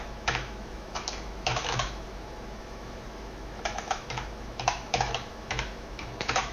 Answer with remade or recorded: remade